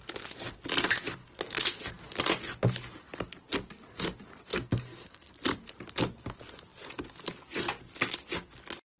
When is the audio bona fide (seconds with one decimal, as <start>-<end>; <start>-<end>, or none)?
0.0-1.2; 1.9-4.5; 5.3-9.0